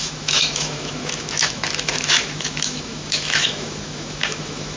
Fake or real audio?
fake